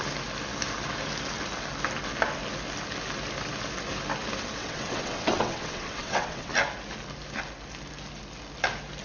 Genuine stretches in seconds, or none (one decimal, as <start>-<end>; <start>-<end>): 0.0-4.6; 6.5-9.0